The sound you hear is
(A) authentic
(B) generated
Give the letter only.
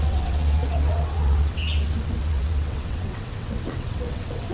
B